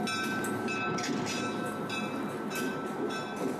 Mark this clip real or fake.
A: real